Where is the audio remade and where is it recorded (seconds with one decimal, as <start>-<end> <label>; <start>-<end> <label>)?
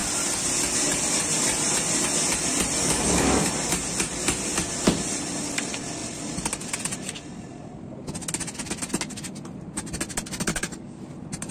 0.0-2.8 recorded; 2.8-3.5 remade; 3.5-10.5 recorded; 10.5-11.0 remade; 11.0-11.5 recorded